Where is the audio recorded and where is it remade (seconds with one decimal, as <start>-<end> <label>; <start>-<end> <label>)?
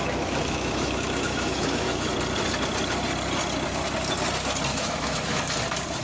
0.0-2.1 remade; 2.1-4.7 recorded; 4.7-5.5 remade; 5.5-6.0 recorded